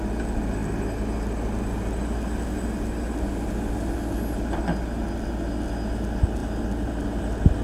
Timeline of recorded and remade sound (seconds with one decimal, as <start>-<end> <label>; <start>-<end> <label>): 0.0-6.4 recorded; 6.4-6.9 remade; 6.9-7.6 recorded